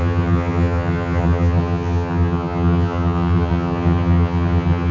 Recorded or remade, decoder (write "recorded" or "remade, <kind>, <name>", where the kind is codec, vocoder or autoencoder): remade, vocoder, HiFi-GAN